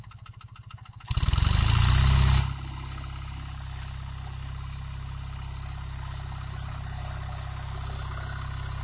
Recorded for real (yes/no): yes